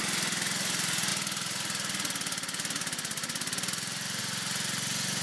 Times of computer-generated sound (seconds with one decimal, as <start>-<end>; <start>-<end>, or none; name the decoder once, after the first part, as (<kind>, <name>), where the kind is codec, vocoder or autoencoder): none

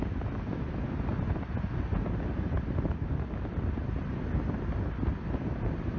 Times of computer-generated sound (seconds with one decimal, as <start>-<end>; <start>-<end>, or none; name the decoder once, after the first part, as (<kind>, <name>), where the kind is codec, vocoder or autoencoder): 0.0-1.1 (vocoder, BigVGAN v2); 4.2-6.0

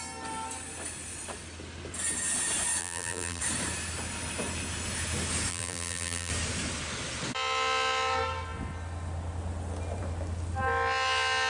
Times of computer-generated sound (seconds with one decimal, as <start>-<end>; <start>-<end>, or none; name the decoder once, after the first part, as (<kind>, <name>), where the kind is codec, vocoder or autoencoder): 2.8-3.4 (vocoder, BigVGAN v2); 5.5-6.3

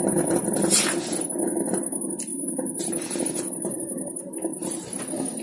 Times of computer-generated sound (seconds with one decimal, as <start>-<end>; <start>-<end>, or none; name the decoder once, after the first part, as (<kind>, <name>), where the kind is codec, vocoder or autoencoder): 2.3-3.2 (vocoder, BigVGAN v2); 4.5-5.0

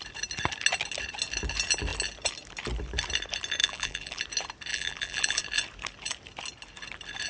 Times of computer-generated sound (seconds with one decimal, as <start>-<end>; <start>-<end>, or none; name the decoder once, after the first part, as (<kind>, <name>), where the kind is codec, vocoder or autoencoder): 3.6-4.2 (vocoder, BigVGAN v2); 4.7-5.4

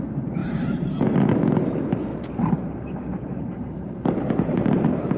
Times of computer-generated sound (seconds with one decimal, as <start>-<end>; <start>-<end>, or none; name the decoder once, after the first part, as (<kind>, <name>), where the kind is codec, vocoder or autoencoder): 0.4-1.2 (vocoder, BigVGAN v2); 2.1-5.2

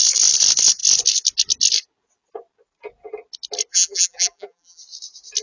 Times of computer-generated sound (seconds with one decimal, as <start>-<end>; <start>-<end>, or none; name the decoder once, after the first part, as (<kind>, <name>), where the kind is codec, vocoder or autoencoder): 3.7-4.8 (vocoder, BigVGAN v2)